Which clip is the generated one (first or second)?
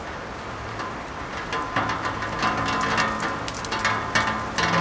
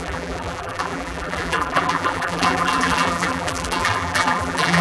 second